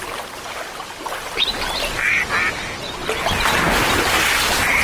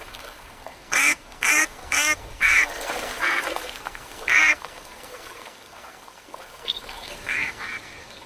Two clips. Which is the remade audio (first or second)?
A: second